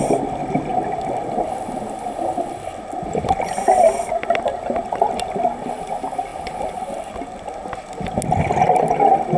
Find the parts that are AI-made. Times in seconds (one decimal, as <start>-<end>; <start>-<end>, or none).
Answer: 0.7-5.7; 6.3-7.5